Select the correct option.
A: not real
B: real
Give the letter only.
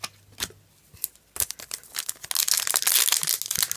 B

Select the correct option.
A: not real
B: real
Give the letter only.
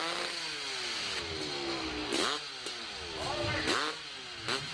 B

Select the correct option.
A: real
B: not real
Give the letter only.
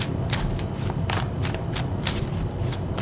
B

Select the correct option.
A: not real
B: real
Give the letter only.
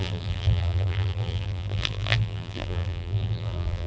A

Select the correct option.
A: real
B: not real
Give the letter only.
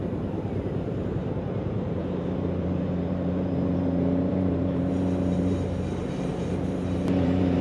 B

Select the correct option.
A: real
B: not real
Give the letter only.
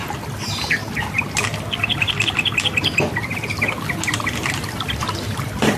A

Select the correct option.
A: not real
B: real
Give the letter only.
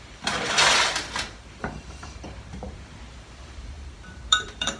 A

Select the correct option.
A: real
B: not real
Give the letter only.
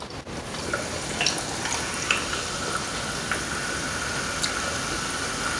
A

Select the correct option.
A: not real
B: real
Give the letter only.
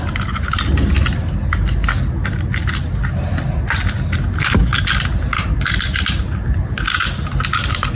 B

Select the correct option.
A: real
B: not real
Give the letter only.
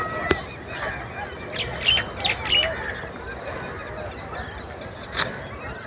A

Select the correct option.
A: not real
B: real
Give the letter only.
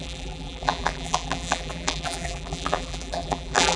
A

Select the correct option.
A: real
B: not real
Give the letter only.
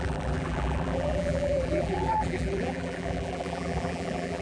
B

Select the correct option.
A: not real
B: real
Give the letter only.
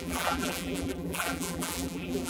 A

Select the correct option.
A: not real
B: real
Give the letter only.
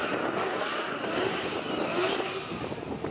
B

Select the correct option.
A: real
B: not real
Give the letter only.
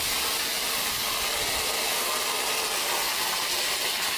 A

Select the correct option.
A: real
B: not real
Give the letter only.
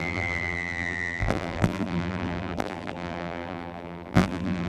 B